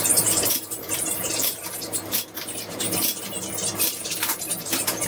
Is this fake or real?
fake